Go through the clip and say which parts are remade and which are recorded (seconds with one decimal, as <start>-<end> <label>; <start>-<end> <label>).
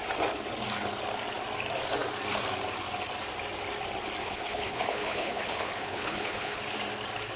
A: 0.0-4.2 recorded; 4.2-6.6 remade; 6.6-7.4 recorded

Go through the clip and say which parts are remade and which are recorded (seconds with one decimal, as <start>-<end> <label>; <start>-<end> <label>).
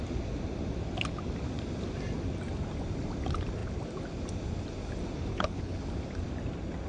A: 0.0-5.3 recorded; 5.3-5.8 remade; 5.8-6.9 recorded